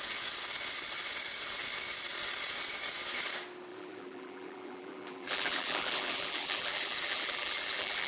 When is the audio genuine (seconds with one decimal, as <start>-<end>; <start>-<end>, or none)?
0.0-3.7